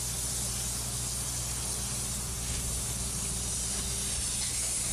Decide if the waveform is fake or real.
real